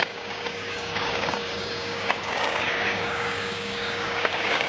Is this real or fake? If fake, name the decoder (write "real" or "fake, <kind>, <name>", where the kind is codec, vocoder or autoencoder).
fake, codec, DAC